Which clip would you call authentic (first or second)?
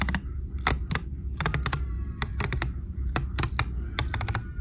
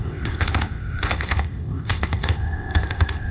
first